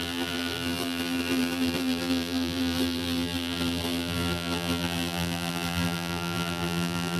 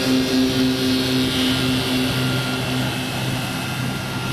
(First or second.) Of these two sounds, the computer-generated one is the first